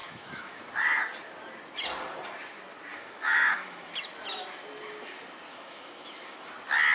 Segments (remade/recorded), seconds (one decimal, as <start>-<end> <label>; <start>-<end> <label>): 0.0-0.6 remade; 0.6-2.9 recorded; 2.9-3.9 remade; 3.9-5.5 recorded; 5.5-6.5 remade; 6.5-6.9 recorded